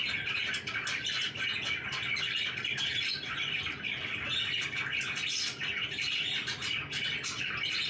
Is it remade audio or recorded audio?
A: recorded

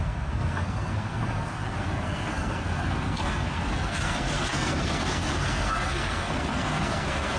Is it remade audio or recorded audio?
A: remade